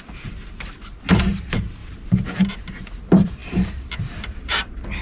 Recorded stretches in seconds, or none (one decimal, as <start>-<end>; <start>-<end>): 0.0-1.8; 2.4-5.0